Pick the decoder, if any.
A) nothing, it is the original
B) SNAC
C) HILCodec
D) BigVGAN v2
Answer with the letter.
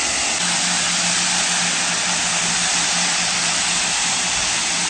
A